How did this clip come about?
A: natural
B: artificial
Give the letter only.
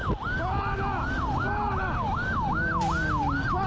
A